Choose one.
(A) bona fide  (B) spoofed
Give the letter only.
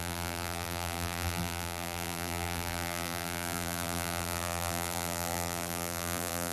B